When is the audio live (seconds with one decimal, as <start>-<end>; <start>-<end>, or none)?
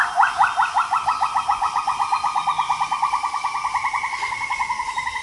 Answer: 0.0-1.5; 2.5-5.2